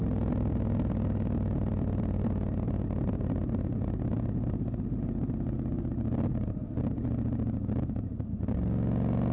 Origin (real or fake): real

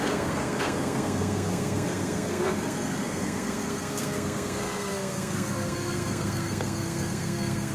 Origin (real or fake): fake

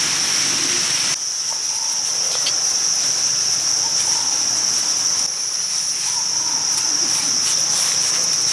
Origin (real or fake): real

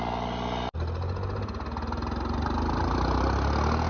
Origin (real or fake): real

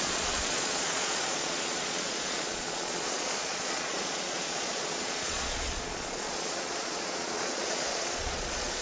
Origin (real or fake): fake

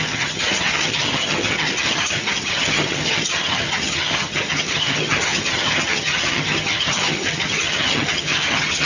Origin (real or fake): fake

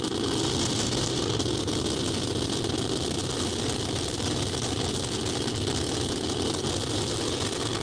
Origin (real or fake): real